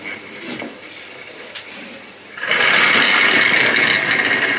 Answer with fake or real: real